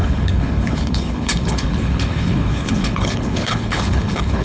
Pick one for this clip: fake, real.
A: fake